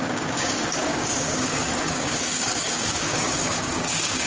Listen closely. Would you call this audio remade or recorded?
remade